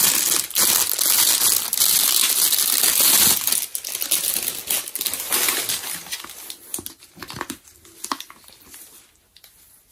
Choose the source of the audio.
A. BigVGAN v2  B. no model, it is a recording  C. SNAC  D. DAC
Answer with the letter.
B